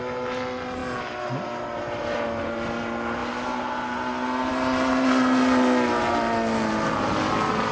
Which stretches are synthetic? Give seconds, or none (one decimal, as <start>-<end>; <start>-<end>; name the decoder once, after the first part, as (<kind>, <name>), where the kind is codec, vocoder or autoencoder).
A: none